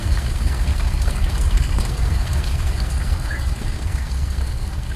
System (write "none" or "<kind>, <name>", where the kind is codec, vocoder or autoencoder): codec, SNAC